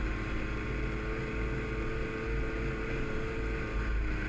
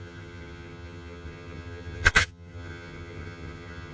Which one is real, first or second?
first